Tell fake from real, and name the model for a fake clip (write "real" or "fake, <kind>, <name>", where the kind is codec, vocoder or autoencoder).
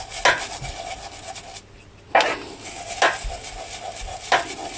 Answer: real